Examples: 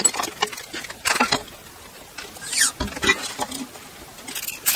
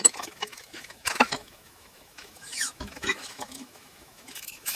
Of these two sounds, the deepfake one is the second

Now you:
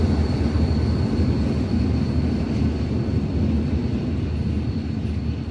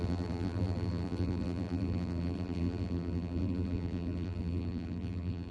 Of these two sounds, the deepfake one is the second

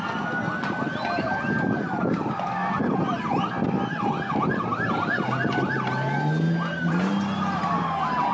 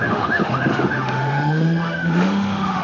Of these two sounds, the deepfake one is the second